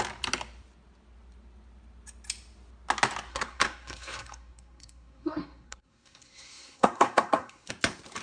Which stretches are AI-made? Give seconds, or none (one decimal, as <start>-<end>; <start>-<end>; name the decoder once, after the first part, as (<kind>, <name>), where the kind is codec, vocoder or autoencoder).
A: 3.3-7.7 (codec, SNAC)